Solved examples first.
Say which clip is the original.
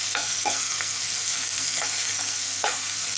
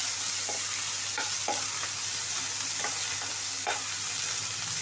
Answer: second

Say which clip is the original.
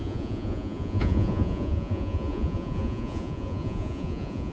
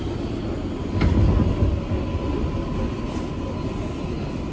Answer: second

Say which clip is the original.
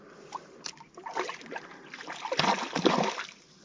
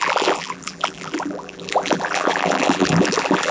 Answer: first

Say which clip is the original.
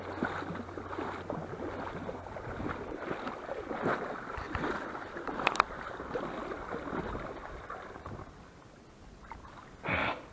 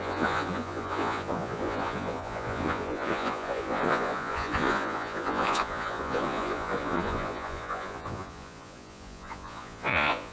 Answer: first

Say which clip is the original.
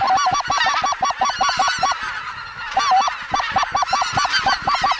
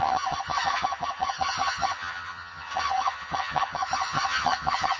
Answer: first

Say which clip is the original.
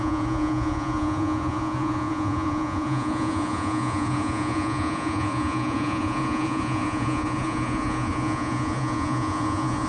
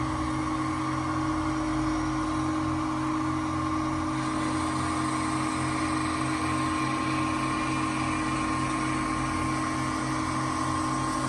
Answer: second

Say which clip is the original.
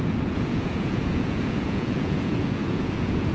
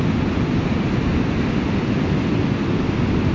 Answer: second